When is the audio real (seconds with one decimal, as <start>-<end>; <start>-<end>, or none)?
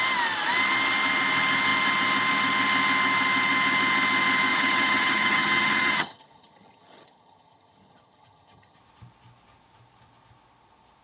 0.0-4.5; 8.8-11.0